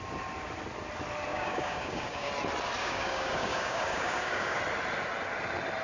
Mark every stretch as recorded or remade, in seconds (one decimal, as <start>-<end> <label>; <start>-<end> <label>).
0.0-1.3 recorded; 1.3-2.3 remade; 2.3-2.8 recorded; 2.8-4.6 remade; 4.6-5.8 recorded